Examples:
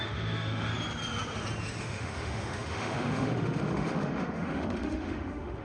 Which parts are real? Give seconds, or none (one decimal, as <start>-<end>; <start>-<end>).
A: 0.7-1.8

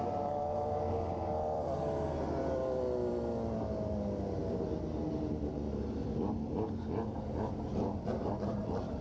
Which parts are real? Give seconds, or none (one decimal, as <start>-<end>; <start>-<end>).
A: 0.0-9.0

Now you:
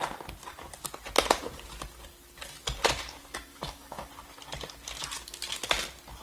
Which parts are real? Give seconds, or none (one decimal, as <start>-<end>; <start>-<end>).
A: 0.0-3.5; 4.1-6.2

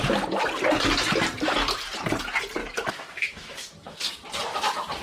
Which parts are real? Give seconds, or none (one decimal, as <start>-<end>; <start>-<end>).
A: 0.0-2.6; 4.1-5.0

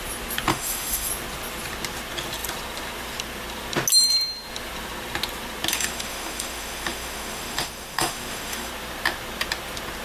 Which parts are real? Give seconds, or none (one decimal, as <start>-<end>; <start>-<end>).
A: 0.0-0.5; 1.1-5.7; 8.7-10.0